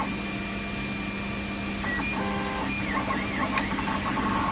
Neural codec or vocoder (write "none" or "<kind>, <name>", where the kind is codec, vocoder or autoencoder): none